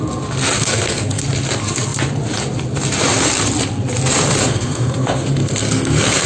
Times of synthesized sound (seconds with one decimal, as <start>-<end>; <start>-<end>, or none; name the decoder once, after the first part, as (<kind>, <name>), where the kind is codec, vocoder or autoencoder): 0.6-1.2 (codec, SNAC); 4.4-6.3